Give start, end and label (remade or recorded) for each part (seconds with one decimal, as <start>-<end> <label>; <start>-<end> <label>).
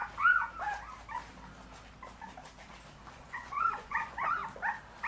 0.0-3.1 recorded; 3.1-4.4 remade; 4.4-5.1 recorded